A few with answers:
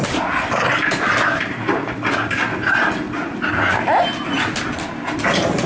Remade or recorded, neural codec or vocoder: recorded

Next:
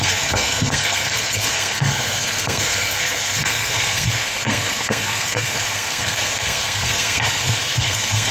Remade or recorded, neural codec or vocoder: remade, codec, SNAC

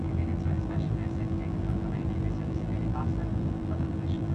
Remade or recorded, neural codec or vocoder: remade, vocoder, BigVGAN v2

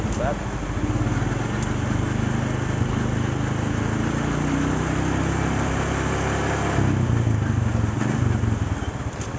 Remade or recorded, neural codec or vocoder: recorded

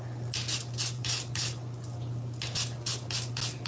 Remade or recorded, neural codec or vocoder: recorded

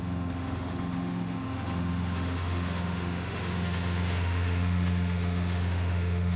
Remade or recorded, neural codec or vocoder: remade, autoencoder, DAC-VAE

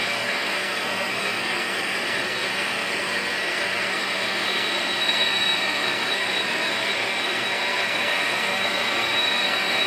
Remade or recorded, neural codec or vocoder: remade, codec, SNAC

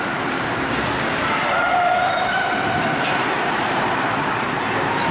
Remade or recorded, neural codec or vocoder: remade, vocoder, BigVGAN v2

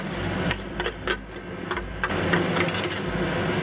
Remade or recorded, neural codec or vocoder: recorded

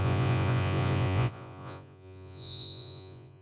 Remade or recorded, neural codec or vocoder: remade, vocoder, Vocos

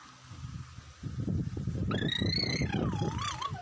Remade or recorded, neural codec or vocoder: recorded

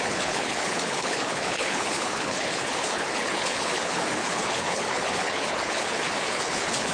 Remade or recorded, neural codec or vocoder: remade, codec, HILCodec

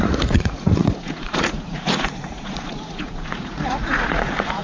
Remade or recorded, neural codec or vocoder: remade, vocoder, Vocos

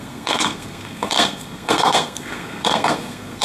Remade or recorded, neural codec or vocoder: remade, codec, SNAC